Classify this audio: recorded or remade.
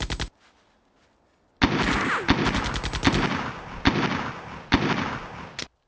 recorded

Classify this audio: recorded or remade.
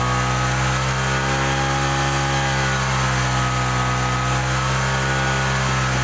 recorded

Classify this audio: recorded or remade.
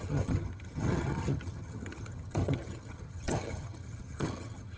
remade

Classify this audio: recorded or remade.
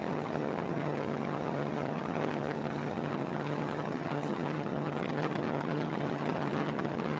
remade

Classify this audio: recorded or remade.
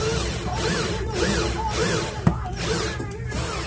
recorded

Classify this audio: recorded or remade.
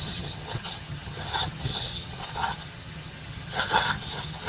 remade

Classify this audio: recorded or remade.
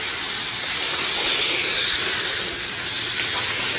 recorded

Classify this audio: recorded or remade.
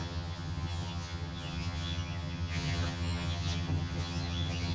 remade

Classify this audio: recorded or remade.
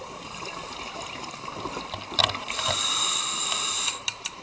recorded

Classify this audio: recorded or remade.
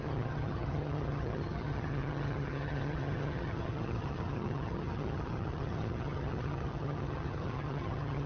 remade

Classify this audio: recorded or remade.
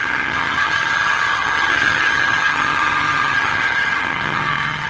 remade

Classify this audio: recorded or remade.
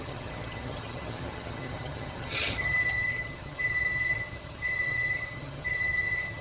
remade